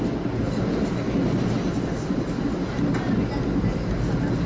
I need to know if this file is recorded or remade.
recorded